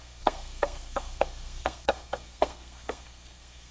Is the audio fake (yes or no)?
yes